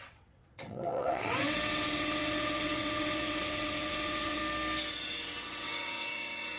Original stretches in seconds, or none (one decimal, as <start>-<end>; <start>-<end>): 4.4-4.9